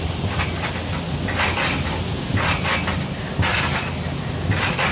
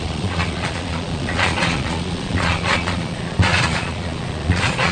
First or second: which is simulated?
second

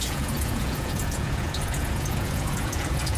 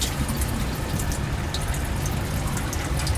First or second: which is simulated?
first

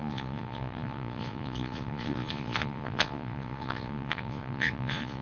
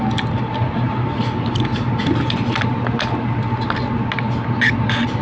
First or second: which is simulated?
first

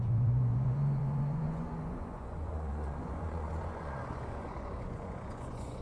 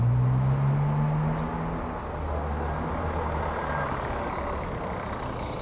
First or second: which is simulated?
first